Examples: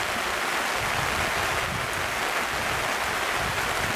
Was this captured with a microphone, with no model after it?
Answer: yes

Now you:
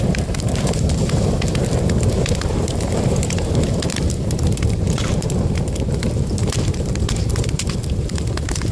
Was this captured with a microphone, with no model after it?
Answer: no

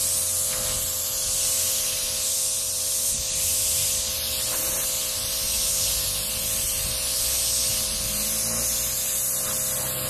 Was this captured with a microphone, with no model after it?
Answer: yes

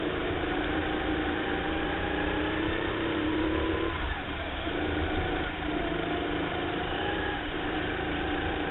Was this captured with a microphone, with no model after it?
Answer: no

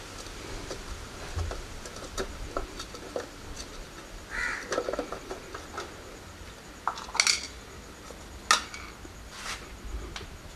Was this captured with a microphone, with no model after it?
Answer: yes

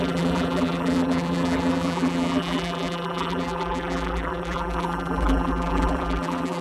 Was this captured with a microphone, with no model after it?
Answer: no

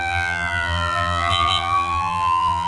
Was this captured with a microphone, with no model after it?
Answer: no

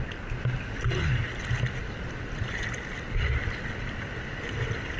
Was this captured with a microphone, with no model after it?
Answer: yes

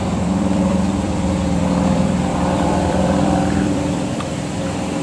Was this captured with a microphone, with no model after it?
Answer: no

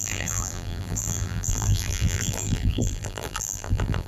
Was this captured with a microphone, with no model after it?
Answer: no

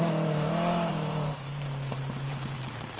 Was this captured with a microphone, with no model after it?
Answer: no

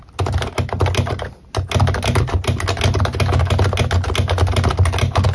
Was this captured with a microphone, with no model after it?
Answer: yes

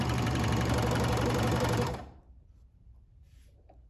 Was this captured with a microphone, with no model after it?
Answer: no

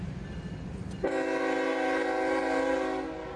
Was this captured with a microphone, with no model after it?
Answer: yes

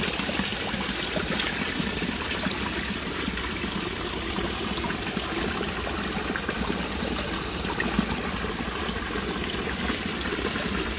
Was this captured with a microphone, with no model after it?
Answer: no